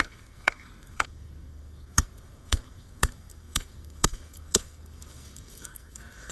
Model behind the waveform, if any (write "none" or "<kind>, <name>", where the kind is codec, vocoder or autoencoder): codec, SNAC